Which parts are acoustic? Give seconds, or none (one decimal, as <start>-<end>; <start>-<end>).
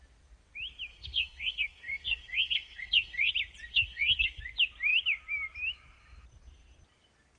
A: 0.0-0.9; 3.3-3.7; 4.4-7.4